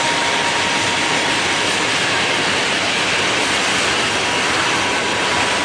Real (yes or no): yes